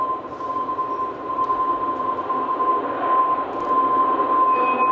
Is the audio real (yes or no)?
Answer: yes